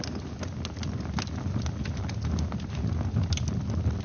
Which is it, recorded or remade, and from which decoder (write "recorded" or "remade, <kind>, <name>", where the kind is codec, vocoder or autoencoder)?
recorded